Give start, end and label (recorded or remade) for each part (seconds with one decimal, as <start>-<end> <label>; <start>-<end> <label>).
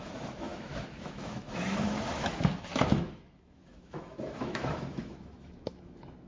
0.0-6.3 remade